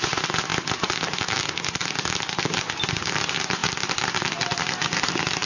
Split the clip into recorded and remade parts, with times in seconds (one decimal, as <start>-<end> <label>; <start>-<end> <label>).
0.0-3.6 recorded; 3.6-5.1 remade; 5.1-5.5 recorded